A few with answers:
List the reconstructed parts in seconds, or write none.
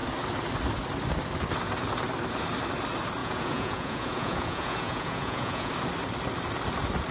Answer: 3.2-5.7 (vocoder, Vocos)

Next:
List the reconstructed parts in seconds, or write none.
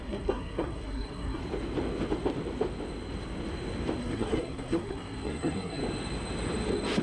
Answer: 0.0-1.4 (codec, SNAC); 4.0-5.8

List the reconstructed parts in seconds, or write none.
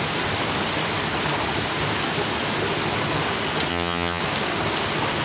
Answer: 3.7-4.2 (vocoder, HiFi-GAN)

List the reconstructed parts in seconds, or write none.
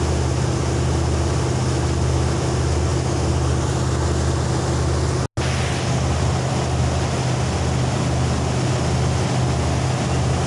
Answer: none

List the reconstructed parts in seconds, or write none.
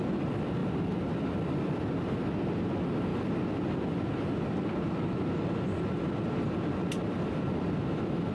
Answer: none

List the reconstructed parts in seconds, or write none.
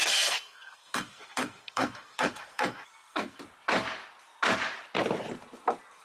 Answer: 0.0-3.4 (codec, SNAC)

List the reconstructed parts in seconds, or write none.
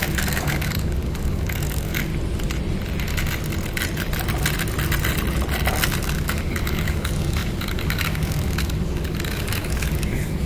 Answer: 0.0-2.1 (codec, DAC); 6.0-10.5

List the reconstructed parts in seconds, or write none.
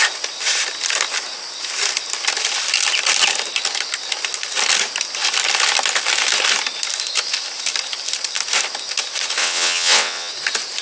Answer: 9.4-10.3 (vocoder, WaveNeXt)